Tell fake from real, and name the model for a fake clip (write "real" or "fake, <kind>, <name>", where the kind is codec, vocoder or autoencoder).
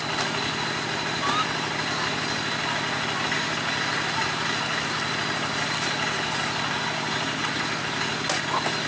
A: real